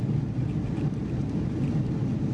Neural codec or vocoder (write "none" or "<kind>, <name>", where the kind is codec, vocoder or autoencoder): none